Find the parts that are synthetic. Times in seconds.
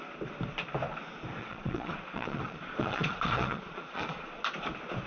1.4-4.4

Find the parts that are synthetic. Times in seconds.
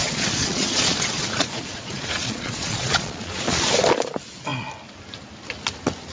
0.0-3.7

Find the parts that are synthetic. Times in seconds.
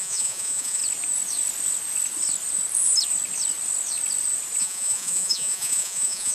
0.0-0.8; 4.6-6.3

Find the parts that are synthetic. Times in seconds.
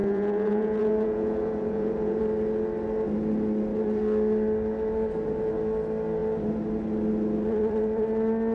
0.0-2.2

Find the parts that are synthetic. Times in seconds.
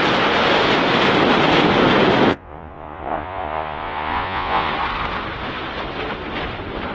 2.3-4.7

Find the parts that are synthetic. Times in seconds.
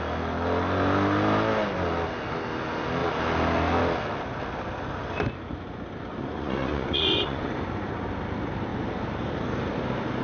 6.2-7.5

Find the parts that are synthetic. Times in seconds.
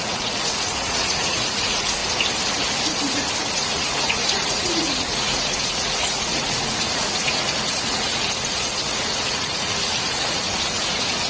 0.0-2.0; 3.5-11.3